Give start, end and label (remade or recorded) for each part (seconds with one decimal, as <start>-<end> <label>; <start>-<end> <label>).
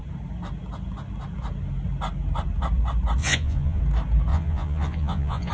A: 0.0-3.2 recorded; 3.2-3.8 remade; 3.8-4.3 recorded; 4.3-5.5 remade